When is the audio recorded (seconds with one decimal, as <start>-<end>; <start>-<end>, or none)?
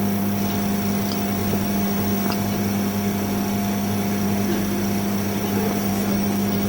0.0-5.9